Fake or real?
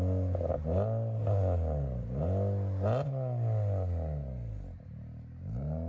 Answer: real